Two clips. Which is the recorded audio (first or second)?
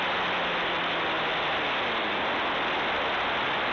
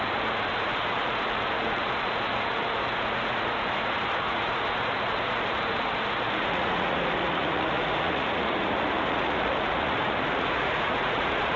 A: first